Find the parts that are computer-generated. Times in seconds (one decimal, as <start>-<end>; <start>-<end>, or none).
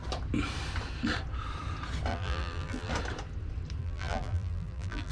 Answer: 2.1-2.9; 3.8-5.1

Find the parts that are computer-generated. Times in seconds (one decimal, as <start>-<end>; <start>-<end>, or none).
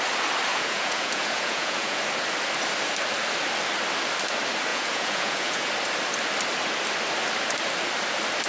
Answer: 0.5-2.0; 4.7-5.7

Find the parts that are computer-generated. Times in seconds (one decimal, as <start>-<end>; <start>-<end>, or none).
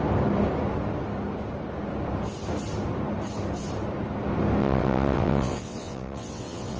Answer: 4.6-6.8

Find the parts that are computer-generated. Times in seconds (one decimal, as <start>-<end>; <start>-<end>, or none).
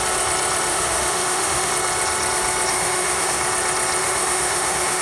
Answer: 0.7-1.7; 2.7-3.4; 4.0-5.0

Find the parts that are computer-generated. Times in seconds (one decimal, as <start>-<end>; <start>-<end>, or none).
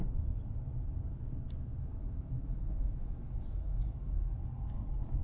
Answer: 1.7-4.3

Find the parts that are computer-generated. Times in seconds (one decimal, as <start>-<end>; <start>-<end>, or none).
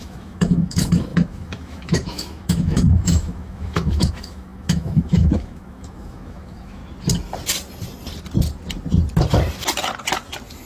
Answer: 0.0-6.8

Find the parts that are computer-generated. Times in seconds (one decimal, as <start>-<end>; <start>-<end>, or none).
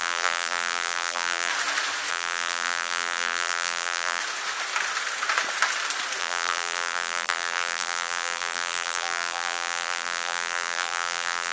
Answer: 0.0-1.5; 2.1-4.2; 6.2-11.5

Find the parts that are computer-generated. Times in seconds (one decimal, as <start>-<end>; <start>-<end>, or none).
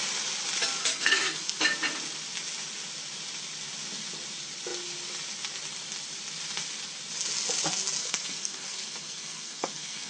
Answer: 0.8-1.6; 8.0-10.1